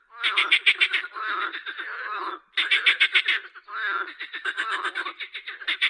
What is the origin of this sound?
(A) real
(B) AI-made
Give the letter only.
B